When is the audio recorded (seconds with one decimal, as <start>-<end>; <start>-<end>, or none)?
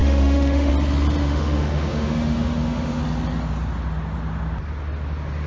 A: 0.7-1.2; 3.0-5.5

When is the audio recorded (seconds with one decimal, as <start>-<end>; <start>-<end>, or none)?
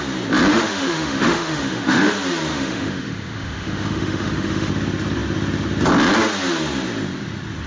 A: 0.0-0.5; 2.1-2.5; 4.7-7.7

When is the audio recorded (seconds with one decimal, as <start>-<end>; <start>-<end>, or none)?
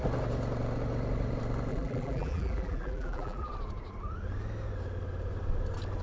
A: 0.0-1.7; 3.5-6.0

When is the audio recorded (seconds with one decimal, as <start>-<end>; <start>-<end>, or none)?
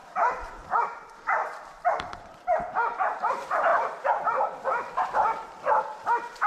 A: none